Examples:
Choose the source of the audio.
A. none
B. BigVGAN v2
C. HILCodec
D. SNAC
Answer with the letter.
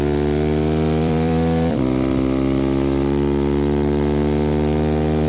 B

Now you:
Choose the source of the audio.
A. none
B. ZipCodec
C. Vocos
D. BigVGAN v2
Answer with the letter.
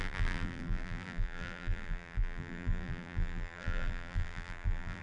D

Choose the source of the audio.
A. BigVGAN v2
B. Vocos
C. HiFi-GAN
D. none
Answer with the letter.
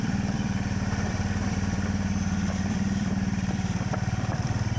A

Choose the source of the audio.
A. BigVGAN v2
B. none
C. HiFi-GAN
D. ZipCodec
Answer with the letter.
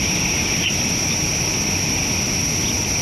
B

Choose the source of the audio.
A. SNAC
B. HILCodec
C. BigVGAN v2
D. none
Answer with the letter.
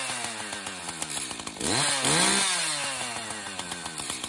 D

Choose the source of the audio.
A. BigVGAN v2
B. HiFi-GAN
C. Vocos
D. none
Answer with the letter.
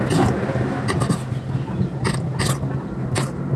D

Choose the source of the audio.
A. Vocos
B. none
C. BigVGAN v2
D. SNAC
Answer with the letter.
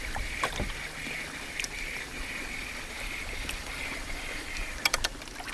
B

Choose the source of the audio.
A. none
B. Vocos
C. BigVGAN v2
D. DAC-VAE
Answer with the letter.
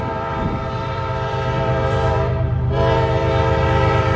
C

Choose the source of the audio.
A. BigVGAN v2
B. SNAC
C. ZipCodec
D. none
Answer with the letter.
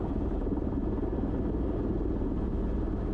D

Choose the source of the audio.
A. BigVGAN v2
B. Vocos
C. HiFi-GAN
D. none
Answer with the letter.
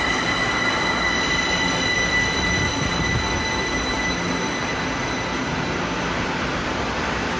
D